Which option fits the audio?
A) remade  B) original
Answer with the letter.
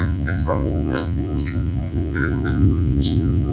A